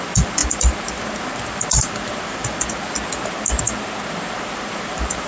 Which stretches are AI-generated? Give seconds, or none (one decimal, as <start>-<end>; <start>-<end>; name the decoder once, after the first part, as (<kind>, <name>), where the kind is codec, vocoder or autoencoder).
none